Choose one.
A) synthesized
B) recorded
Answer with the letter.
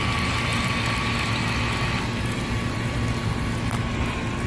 B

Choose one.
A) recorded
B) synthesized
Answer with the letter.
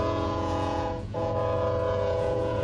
B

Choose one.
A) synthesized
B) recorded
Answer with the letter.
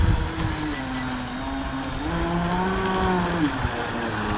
B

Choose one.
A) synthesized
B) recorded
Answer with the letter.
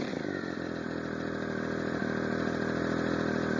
A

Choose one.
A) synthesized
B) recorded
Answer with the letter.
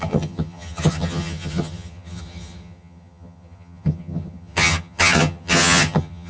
A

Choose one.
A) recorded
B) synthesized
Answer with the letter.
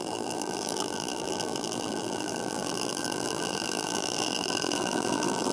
B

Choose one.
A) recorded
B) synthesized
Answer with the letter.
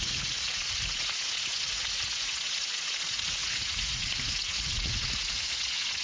B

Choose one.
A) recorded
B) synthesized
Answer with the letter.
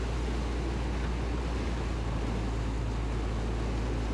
A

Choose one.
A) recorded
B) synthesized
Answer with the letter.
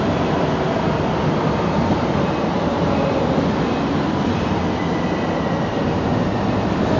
A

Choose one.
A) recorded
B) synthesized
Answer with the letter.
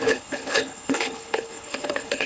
B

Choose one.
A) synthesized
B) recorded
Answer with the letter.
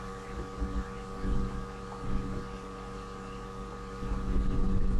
A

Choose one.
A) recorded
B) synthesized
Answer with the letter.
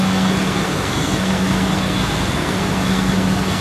B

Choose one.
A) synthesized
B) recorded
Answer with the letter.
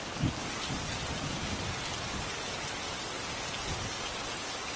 B